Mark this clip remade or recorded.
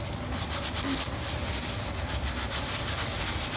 recorded